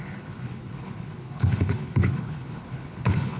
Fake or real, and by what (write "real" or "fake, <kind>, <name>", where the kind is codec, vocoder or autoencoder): fake, codec, HILCodec